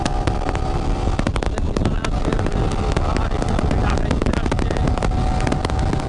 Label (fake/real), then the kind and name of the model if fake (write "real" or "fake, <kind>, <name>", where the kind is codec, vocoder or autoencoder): real